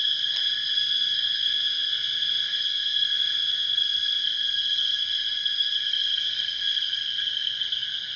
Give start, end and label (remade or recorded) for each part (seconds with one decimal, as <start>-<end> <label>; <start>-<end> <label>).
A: 0.0-8.2 remade